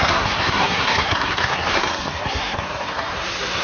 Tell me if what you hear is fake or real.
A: fake